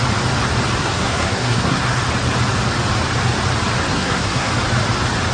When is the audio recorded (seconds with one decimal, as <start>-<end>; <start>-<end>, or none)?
0.0-0.8; 2.0-3.9; 4.5-5.3